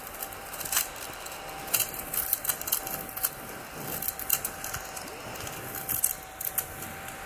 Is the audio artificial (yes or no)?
yes